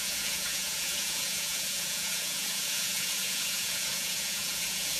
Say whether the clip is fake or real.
fake